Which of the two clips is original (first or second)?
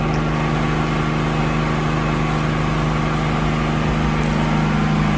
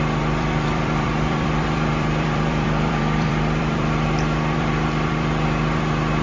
first